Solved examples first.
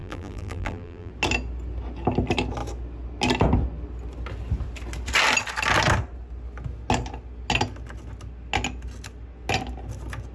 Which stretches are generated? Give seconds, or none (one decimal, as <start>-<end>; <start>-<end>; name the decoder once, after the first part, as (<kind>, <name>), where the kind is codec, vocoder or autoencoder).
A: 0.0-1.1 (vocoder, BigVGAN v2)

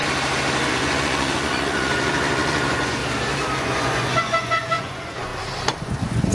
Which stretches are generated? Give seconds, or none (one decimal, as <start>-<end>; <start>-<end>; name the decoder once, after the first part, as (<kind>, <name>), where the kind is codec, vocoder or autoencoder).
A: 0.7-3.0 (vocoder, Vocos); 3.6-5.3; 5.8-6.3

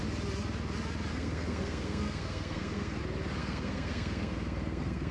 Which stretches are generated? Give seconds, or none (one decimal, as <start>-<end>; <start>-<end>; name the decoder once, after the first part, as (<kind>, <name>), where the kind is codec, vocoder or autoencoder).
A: 1.1-3.0 (codec, SNAC); 3.4-5.1

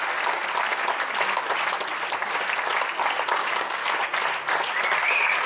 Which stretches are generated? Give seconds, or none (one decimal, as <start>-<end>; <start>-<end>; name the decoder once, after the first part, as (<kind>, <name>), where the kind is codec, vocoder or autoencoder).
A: 3.3-3.8 (codec, DAC); 5.1-5.5

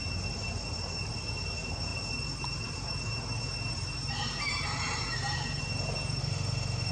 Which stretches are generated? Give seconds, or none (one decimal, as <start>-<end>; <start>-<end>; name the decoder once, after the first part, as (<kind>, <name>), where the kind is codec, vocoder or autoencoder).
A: 6.2-6.9 (autoencoder, DAC-VAE)

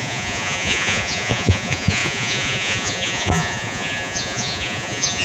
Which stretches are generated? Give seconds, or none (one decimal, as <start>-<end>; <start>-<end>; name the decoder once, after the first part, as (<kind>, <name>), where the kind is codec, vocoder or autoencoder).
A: 0.0-5.2 (vocoder, Vocos)